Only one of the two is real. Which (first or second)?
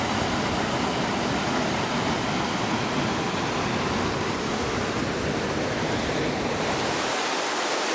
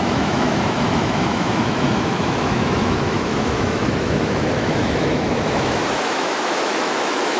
first